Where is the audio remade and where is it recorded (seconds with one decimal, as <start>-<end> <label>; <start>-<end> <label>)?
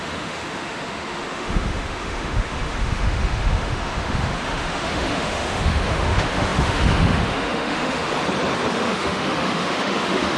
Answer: 0.0-8.1 remade; 8.1-8.7 recorded; 8.7-10.4 remade